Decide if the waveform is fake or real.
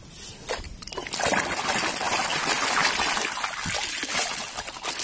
real